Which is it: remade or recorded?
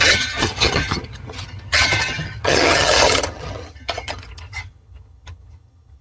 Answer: remade